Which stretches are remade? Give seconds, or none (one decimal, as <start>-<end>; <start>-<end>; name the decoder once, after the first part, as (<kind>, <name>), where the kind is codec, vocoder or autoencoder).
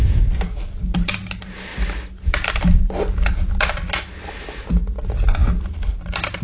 none